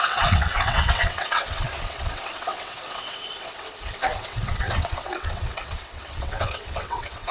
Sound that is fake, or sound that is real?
fake